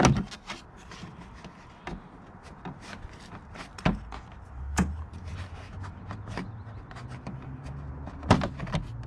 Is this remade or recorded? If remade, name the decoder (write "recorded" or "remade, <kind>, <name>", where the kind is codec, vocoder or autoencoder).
recorded